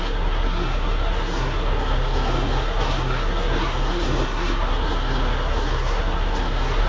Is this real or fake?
fake